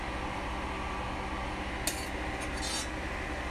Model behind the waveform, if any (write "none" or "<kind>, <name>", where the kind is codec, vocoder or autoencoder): none